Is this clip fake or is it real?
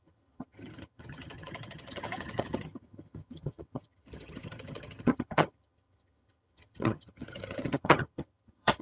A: fake